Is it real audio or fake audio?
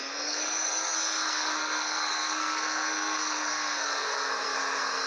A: fake